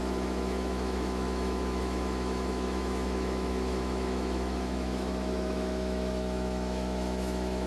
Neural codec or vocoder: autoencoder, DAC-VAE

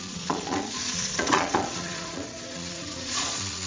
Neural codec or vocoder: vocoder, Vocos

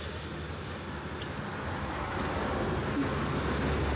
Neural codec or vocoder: none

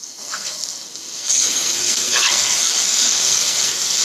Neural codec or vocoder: codec, SNAC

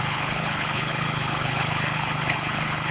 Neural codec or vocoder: codec, HILCodec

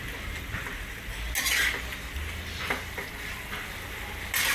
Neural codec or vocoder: none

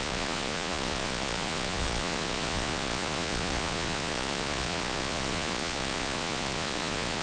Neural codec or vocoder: vocoder, Vocos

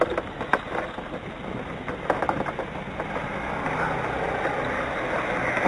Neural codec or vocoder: none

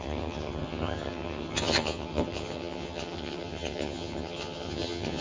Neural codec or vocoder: vocoder, HiFi-GAN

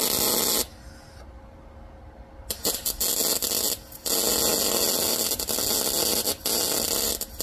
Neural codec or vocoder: none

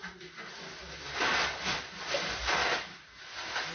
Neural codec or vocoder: none